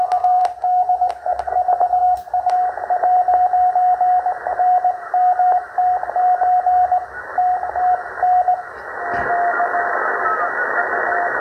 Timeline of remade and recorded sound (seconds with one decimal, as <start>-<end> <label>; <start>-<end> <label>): 0.0-11.4 recorded

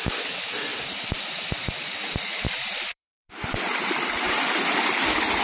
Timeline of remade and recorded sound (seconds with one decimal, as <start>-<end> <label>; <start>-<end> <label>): 0.0-0.7 recorded; 0.7-3.9 remade; 3.9-5.4 recorded

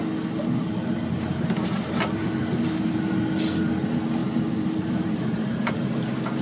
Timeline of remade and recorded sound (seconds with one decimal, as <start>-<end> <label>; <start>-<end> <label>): 0.0-1.6 recorded; 1.6-3.2 remade; 3.2-4.2 recorded; 4.2-5.7 remade; 5.7-6.4 recorded

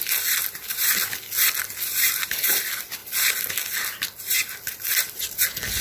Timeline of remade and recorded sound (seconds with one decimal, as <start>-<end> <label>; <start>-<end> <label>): 0.0-1.9 recorded; 1.9-2.5 remade; 2.5-5.8 recorded

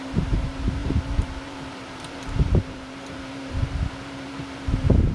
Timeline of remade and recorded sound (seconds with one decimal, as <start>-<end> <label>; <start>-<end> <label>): 0.0-5.1 remade

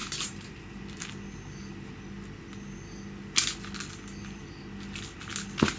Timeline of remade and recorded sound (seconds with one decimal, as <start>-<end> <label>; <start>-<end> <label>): 0.0-0.8 remade; 0.8-5.8 recorded

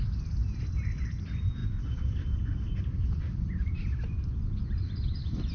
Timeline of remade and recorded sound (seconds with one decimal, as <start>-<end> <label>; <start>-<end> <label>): 0.0-0.4 remade; 0.4-1.1 recorded; 1.1-3.6 remade; 3.6-4.7 recorded; 4.7-5.5 remade

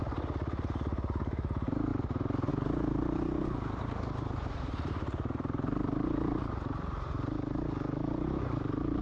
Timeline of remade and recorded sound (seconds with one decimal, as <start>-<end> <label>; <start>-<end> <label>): 0.0-1.9 remade; 1.9-2.5 recorded; 2.5-9.0 remade